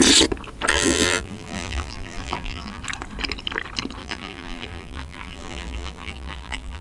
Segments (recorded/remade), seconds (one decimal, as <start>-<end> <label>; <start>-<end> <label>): 0.0-0.7 recorded; 0.7-2.8 remade; 2.8-4.0 recorded; 4.0-6.8 remade